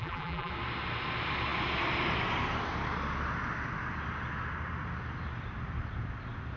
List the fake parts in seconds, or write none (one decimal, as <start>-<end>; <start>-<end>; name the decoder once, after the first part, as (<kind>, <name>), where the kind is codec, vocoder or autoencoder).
0.0-0.5 (vocoder, BigVGAN v2)